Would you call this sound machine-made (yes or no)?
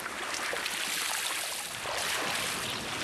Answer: no